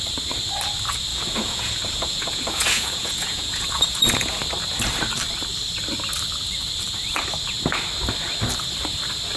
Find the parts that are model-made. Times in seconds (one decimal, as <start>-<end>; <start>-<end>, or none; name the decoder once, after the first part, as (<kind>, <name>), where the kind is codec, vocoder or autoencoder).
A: 1.1-4.4 (vocoder, Vocos)